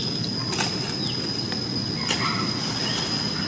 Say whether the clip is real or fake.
real